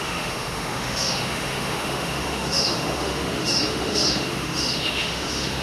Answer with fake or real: fake